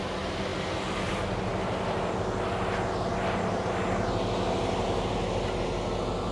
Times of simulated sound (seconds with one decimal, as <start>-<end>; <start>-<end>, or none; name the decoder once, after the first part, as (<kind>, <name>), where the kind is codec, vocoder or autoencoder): none

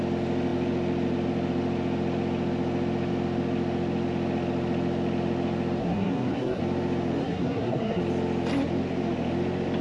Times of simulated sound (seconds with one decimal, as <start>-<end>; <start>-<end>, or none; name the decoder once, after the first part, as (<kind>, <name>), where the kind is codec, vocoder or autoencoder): 5.8-6.6 (codec, SNAC); 7.2-8.0

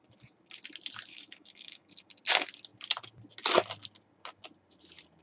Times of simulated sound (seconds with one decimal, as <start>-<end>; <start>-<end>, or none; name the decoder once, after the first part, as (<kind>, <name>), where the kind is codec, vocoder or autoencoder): 1.1-1.9 (autoencoder, DAC-VAE)

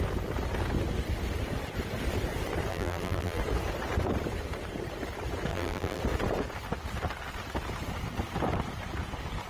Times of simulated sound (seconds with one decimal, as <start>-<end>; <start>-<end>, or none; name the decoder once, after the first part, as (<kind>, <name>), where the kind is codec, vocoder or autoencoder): 2.7-3.4 (vocoder, BigVGAN v2); 5.5-6.0

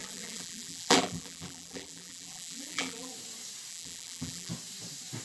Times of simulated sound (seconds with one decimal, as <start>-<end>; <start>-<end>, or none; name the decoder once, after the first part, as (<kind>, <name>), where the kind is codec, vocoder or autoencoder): 0.0-3.1 (vocoder, BigVGAN v2); 3.7-4.5

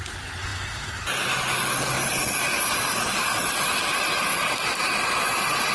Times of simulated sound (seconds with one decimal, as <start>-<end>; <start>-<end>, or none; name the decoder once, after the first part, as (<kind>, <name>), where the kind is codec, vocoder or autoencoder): none